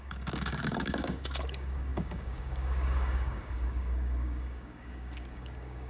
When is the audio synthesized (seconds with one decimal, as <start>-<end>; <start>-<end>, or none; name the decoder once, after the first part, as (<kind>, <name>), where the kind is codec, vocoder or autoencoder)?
0.0-5.9 (codec, DAC)